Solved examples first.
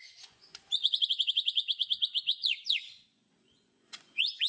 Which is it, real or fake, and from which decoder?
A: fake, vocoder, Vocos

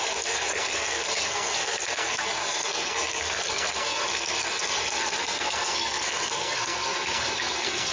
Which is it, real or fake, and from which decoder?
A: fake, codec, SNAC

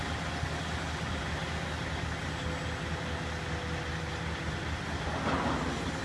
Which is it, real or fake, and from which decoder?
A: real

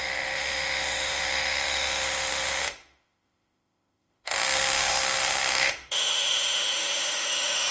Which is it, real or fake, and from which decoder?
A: fake, autoencoder, DAC-VAE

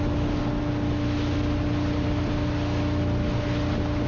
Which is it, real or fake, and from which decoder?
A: real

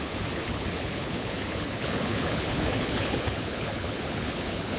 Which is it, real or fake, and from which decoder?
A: fake, codec, HILCodec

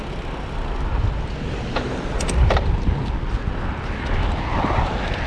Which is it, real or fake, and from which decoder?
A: real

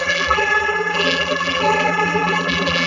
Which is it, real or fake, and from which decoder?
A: fake, vocoder, BigVGAN v2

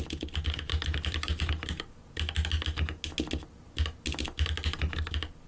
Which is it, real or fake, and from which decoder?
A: real